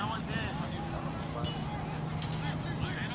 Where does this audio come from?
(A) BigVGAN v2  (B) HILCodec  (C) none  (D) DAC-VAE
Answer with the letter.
C